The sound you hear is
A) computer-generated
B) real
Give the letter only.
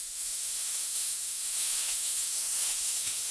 A